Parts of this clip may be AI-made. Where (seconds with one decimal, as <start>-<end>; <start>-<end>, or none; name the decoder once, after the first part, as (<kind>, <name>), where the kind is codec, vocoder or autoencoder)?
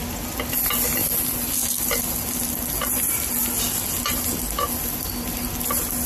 none